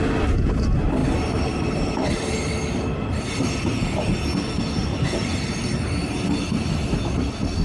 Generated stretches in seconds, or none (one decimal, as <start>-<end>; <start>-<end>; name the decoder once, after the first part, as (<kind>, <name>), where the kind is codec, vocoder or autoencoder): 1.0-3.5 (vocoder, BigVGAN v2); 4.8-5.6